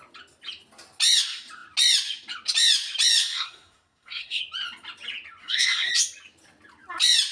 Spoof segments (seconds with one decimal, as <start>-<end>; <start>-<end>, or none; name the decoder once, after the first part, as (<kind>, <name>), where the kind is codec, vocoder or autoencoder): 3.2-4.4 (codec, SNAC); 5.4-5.9